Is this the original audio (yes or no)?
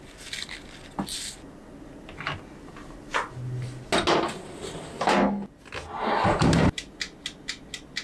yes